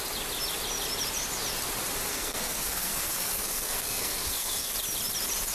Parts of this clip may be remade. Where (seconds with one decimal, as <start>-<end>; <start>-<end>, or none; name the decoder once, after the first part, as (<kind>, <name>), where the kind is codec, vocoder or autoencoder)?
2.1-4.7 (codec, SNAC)